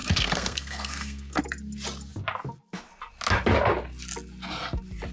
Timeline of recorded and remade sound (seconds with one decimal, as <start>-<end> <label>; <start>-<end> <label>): 0.0-1.4 remade; 1.4-5.1 recorded